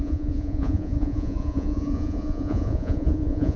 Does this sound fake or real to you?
fake